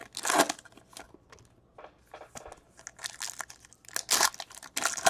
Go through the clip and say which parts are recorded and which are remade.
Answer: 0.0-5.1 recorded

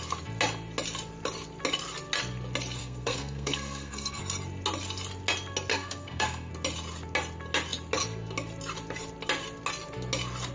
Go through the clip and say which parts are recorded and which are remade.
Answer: 0.0-2.8 recorded; 2.8-4.2 remade; 4.2-5.7 recorded; 5.7-6.5 remade; 6.5-10.5 recorded

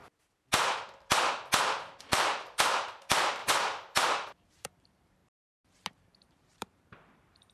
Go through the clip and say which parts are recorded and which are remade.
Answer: 0.0-2.1 recorded; 2.1-3.4 remade; 3.4-4.5 recorded; 4.5-5.2 remade; 5.2-5.9 recorded; 5.9-7.5 remade

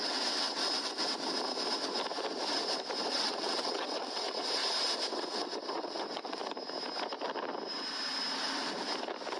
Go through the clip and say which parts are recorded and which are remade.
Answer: 0.0-0.6 remade; 0.6-3.1 recorded; 3.1-4.6 remade; 4.6-5.1 recorded; 5.1-6.4 remade; 6.4-9.4 recorded

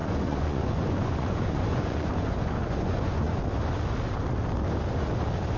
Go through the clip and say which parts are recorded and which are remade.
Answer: 0.0-3.4 remade; 3.4-5.6 recorded